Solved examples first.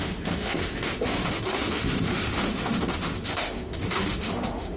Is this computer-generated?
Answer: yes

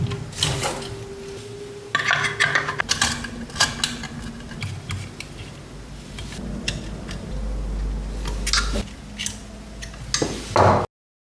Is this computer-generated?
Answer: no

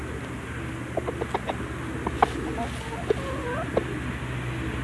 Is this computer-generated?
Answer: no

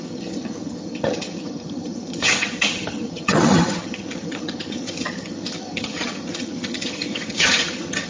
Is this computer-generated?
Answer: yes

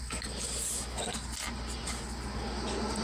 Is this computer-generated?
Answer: no